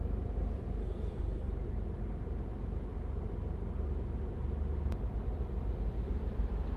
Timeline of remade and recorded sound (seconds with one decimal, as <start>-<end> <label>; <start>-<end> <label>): 0.0-0.8 recorded; 0.8-1.5 remade; 1.5-6.8 recorded